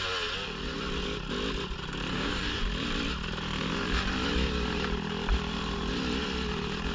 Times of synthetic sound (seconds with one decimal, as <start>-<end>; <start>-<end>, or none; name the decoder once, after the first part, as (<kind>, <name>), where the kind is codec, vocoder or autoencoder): 2.1-2.6 (codec, DAC)